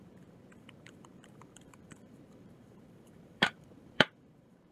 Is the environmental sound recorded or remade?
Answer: remade